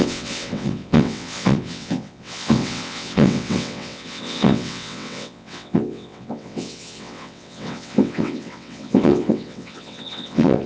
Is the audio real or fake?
fake